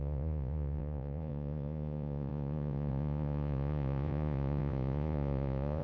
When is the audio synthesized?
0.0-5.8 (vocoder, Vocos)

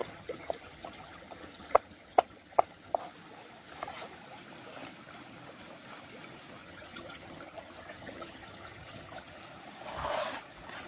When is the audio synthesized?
0.0-3.0 (vocoder, HiFi-GAN); 6.6-9.4

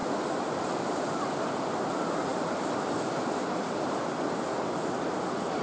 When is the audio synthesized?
none